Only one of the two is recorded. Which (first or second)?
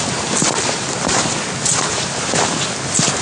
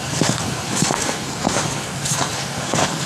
first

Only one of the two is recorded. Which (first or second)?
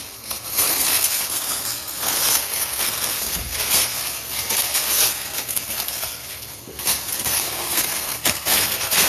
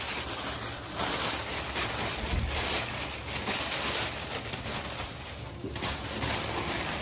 second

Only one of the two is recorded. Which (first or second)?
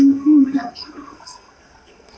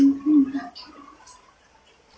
second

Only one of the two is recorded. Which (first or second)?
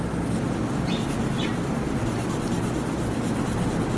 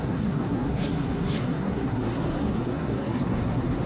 first